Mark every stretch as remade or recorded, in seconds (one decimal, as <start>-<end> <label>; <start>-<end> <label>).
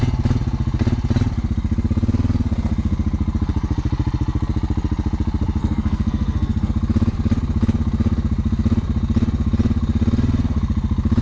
0.0-5.6 recorded; 5.6-6.7 remade; 6.7-11.2 recorded